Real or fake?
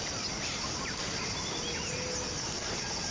real